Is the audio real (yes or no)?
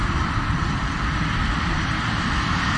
yes